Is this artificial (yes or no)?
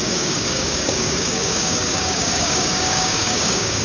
yes